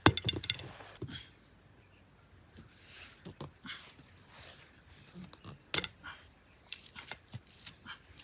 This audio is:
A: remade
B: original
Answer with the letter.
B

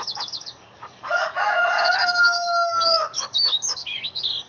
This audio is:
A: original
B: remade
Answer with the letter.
B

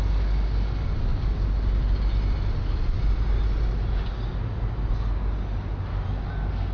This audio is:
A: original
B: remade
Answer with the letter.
A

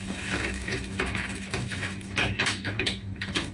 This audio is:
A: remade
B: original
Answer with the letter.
A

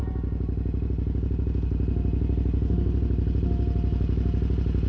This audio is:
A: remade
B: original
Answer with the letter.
B